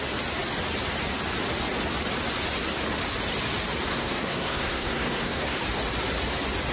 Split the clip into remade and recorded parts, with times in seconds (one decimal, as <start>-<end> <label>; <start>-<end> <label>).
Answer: 0.0-3.9 recorded; 3.9-5.6 remade; 5.6-6.7 recorded